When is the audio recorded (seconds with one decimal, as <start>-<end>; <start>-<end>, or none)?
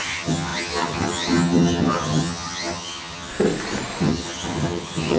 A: 3.3-4.0